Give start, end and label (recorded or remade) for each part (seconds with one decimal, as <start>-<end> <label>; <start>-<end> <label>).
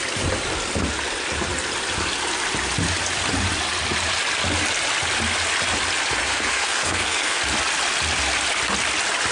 0.0-6.2 recorded; 6.2-7.4 remade; 7.4-9.3 recorded